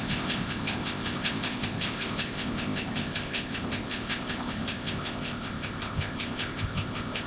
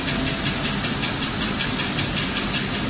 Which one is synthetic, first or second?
first